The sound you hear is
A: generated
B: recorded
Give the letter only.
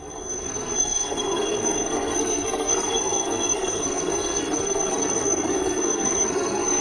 A